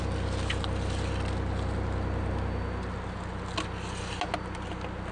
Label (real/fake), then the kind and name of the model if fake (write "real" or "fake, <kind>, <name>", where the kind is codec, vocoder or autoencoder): real